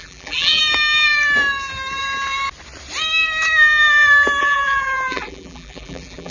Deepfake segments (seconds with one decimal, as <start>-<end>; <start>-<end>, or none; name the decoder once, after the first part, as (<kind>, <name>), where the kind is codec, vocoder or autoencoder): 0.0-0.6 (vocoder, BigVGAN v2); 4.4-6.3